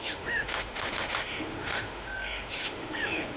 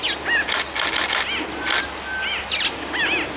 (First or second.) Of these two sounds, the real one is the second